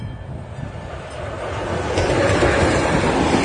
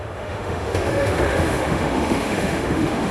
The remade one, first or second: second